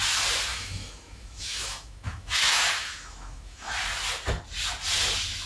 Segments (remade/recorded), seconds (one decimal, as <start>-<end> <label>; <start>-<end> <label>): 0.0-0.5 recorded; 0.5-3.7 remade; 3.7-5.5 recorded